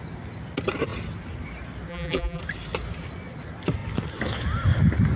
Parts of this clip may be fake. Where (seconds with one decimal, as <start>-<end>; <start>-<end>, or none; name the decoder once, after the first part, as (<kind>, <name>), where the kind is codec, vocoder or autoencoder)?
1.9-2.4 (vocoder, BigVGAN v2)